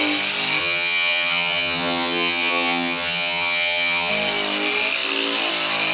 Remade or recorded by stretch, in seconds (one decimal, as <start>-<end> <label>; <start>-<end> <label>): 0.0-0.6 recorded; 0.6-4.1 remade; 4.1-5.9 recorded